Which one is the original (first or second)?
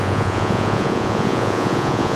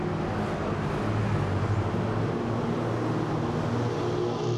second